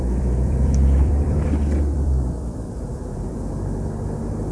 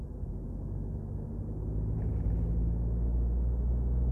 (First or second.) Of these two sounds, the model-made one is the first